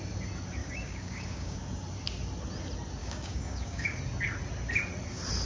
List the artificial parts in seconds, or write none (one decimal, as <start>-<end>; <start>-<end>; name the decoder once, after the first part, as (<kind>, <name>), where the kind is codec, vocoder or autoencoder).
0.6-1.6 (codec, DAC); 3.0-4.0